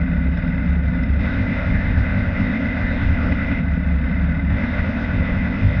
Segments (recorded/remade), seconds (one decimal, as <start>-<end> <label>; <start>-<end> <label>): 0.0-1.2 recorded; 1.2-3.6 remade; 3.6-4.5 recorded; 4.5-5.8 remade